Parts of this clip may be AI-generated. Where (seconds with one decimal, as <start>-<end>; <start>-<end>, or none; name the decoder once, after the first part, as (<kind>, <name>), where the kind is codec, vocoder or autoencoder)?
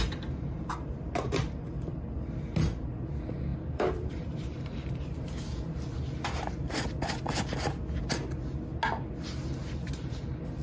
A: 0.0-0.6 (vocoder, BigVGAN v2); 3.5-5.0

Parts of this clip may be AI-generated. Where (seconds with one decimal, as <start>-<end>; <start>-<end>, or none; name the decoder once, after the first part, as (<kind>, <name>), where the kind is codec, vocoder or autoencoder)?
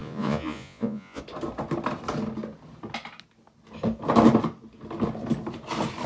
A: 0.0-1.2 (vocoder, Vocos)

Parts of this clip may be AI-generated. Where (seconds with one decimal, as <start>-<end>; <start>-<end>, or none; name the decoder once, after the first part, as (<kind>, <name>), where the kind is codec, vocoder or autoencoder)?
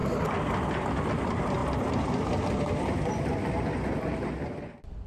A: none